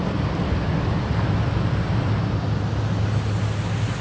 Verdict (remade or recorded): recorded